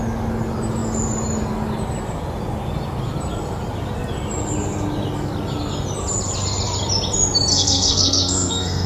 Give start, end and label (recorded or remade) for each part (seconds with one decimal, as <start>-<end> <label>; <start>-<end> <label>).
0.0-7.5 recorded; 7.5-8.9 remade